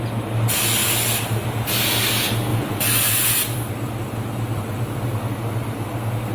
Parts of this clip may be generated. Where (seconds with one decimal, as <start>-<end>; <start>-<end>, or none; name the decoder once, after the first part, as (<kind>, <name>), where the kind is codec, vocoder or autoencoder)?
0.8-1.8 (vocoder, BigVGAN v2); 2.5-5.2